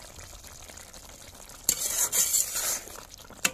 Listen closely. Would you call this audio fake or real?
fake